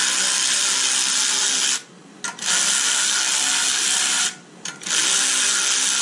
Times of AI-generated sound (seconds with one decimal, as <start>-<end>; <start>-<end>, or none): 3.6-5.0